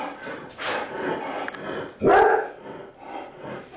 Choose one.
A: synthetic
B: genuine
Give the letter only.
B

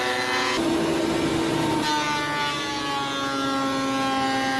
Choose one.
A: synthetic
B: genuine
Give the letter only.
B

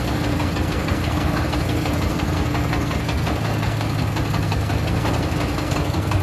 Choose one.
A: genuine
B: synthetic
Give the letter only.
B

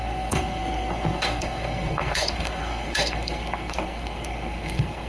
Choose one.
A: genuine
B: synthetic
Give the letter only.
B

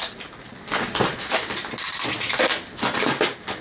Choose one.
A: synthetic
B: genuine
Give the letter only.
B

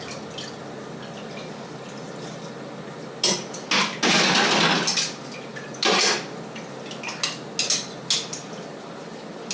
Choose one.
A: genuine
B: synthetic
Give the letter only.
A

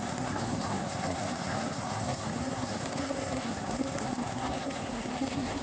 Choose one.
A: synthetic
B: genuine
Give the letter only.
A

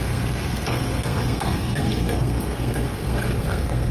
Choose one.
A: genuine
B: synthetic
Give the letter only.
B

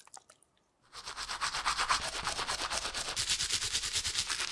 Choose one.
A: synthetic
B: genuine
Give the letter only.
B